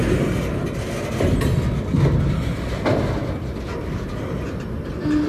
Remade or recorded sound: recorded